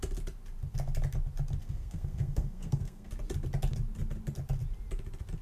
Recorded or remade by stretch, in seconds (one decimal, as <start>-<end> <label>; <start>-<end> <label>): 0.0-1.6 recorded; 1.6-3.1 remade; 3.1-5.4 recorded